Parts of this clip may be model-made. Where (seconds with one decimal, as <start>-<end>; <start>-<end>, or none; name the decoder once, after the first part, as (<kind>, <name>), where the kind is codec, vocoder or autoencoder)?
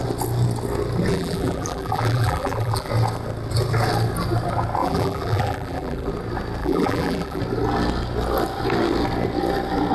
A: 1.1-2.9 (vocoder, BigVGAN v2); 4.8-6.1; 6.6-7.4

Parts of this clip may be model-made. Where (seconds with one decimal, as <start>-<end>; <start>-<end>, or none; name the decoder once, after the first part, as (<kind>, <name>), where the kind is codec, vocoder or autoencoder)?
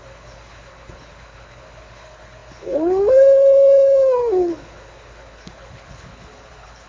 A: 0.0-6.9 (codec, HILCodec)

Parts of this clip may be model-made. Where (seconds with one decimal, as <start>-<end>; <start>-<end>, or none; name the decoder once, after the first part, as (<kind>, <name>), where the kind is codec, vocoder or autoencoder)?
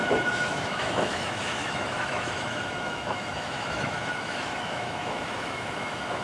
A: 0.0-6.2 (autoencoder, DAC-VAE)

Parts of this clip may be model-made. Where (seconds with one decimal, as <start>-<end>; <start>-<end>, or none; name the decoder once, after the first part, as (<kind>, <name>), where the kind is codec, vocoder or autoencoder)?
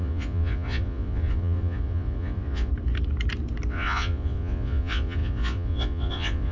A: 0.0-2.7 (vocoder, Vocos); 3.7-6.5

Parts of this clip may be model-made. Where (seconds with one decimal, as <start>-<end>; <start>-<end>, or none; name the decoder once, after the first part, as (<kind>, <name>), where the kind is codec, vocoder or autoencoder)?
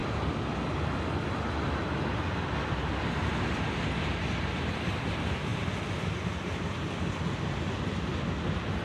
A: none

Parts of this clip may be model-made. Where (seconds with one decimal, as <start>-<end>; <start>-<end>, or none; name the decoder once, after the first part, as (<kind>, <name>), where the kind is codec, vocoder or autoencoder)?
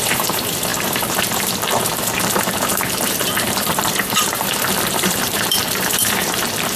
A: 0.0-6.8 (vocoder, BigVGAN v2)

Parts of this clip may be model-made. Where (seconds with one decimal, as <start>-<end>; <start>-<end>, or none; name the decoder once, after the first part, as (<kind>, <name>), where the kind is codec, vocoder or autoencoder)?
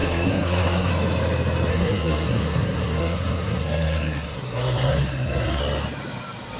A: 0.0-0.9 (codec, SNAC); 1.7-5.6